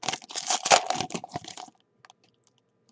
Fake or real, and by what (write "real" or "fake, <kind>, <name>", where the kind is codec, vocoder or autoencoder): real